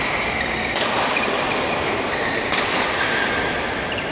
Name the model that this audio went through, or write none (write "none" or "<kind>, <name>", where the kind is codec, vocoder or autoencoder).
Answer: vocoder, BigVGAN v2